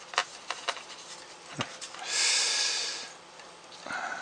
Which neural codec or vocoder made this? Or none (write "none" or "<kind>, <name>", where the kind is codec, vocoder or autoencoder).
none